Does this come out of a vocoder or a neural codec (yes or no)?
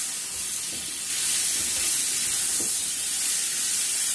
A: no